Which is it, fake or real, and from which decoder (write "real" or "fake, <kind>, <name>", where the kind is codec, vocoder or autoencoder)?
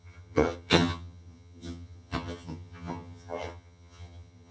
fake, vocoder, HiFi-GAN